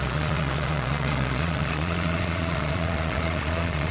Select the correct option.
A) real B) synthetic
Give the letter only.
B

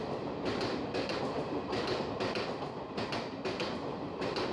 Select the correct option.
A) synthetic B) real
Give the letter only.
B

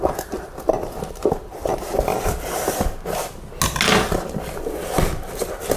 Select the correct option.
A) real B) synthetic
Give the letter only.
A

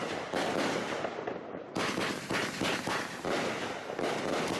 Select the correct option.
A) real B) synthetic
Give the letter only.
A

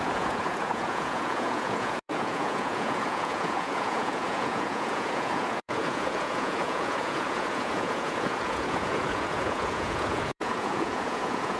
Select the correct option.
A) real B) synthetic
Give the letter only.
B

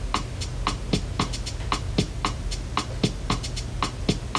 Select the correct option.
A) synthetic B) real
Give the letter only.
B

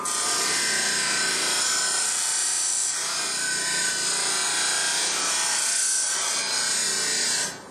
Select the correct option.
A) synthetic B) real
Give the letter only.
B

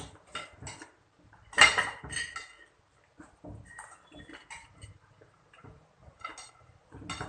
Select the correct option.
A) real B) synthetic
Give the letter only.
A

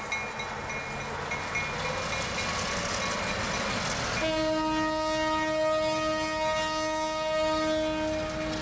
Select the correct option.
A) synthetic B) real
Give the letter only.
B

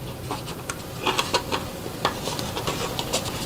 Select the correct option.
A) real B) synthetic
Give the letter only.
A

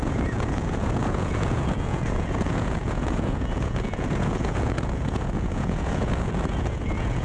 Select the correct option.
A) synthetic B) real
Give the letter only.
A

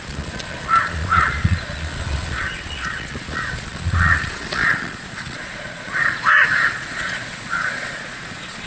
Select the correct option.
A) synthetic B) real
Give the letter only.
A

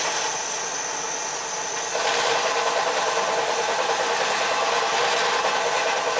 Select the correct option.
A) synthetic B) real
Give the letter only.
B